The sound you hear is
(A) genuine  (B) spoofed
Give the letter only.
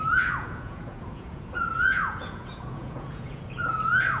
B